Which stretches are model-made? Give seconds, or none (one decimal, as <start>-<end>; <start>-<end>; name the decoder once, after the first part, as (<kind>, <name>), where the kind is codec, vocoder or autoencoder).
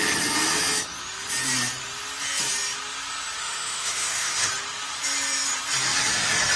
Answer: 3.4-4.5 (autoencoder, DAC-VAE)